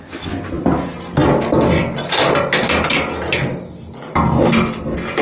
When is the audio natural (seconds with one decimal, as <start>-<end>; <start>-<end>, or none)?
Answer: 0.0-5.2